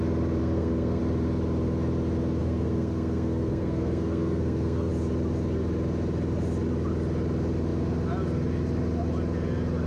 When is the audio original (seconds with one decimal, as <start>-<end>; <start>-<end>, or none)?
0.0-0.4; 1.0-2.4; 4.9-9.9